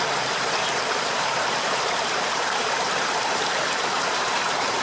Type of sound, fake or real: fake